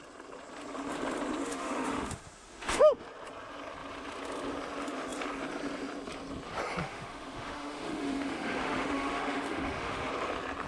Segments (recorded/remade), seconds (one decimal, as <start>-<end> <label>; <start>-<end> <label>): 0.0-1.4 recorded; 1.4-3.0 remade; 3.0-6.8 recorded; 6.8-10.1 remade; 10.1-10.7 recorded